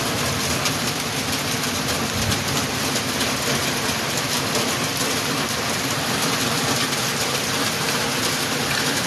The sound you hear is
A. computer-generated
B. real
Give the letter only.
A